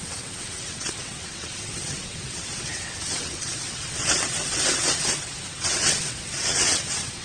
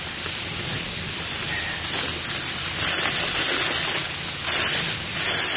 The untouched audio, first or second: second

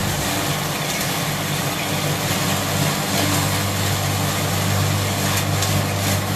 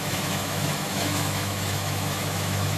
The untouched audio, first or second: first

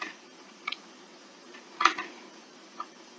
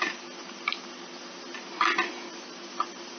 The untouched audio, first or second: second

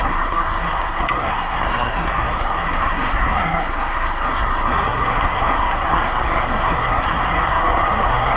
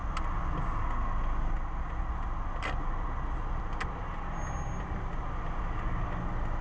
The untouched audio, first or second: second